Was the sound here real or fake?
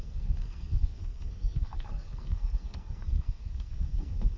fake